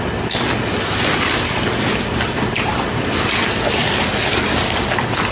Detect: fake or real real